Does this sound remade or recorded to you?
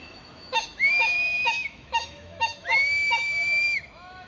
remade